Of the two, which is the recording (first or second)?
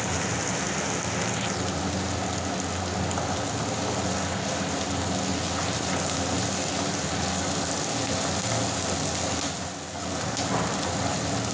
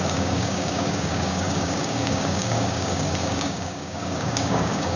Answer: first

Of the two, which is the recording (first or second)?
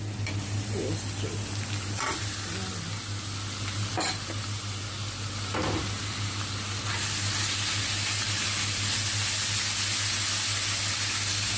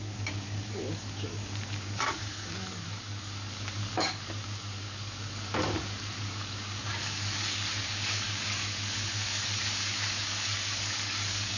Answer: first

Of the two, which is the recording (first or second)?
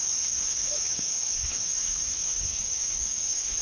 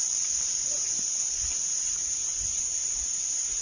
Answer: second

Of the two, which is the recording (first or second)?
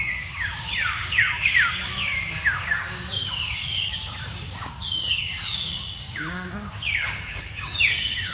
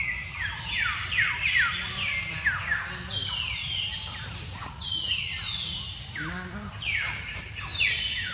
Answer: second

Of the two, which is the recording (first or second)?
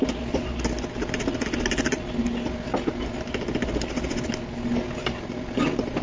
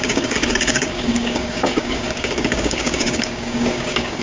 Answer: first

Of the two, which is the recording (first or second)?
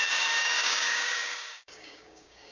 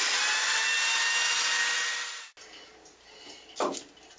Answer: second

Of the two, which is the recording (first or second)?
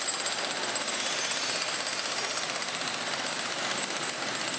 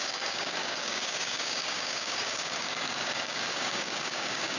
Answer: first